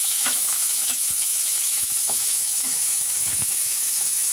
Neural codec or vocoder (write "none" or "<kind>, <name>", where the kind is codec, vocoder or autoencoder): autoencoder, DAC-VAE